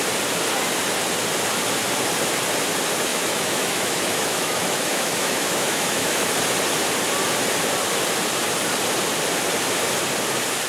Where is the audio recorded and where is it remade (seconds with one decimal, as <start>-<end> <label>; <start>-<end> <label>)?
0.0-3.1 recorded; 3.1-6.3 remade; 6.3-10.7 recorded

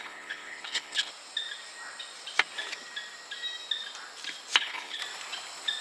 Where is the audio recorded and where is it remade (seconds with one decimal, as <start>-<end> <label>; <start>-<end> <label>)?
0.0-1.1 remade; 1.1-4.6 recorded; 4.6-5.0 remade; 5.0-5.8 recorded

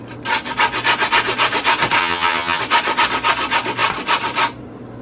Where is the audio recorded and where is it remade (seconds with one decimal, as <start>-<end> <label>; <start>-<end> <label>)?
0.0-2.0 recorded; 2.0-2.6 remade; 2.6-5.0 recorded

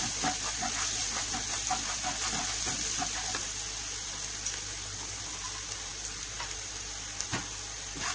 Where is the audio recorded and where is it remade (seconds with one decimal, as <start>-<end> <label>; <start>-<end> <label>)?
0.0-8.1 recorded

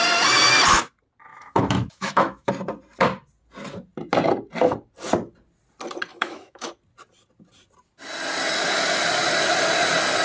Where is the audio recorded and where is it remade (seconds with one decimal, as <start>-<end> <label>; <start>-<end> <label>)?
0.0-1.3 recorded; 1.3-2.5 remade; 2.5-6.1 recorded; 6.1-6.7 remade; 6.7-10.2 recorded

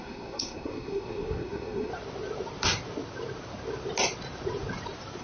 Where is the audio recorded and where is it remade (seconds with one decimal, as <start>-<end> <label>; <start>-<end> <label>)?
0.0-1.9 remade; 1.9-5.2 recorded

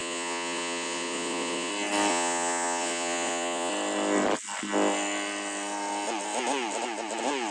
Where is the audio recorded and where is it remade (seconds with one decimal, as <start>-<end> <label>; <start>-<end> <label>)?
0.0-1.7 remade; 1.7-2.1 recorded; 2.1-3.7 remade; 3.7-7.5 recorded